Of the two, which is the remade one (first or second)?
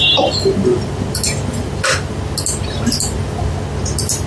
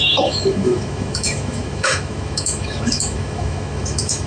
second